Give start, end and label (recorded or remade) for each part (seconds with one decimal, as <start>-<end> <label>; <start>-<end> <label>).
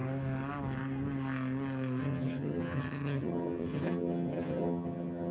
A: 0.0-2.0 recorded; 2.0-5.3 remade